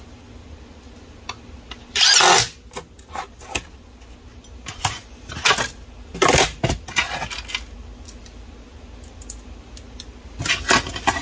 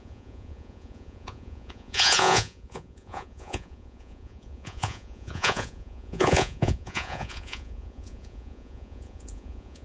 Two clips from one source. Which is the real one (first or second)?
first